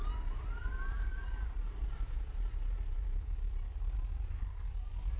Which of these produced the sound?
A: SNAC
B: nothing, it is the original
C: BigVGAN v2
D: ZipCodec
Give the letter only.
C